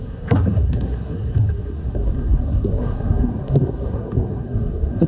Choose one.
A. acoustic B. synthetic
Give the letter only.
B